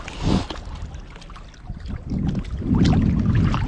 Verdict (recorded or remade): recorded